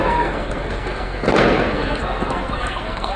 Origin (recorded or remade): remade